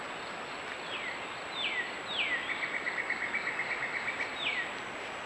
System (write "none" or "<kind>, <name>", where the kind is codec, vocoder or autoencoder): none